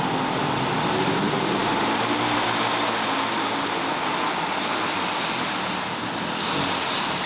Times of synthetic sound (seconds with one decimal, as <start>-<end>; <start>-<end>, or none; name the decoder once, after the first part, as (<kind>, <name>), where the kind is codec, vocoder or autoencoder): none